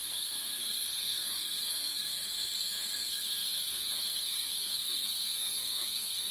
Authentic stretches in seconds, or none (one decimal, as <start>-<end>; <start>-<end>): none